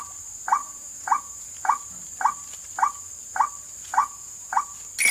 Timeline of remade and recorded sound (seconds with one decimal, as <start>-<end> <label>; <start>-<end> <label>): 0.0-0.6 recorded; 0.6-1.8 remade; 1.8-4.0 recorded; 4.0-4.6 remade; 4.6-5.1 recorded